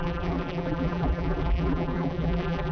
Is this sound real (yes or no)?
no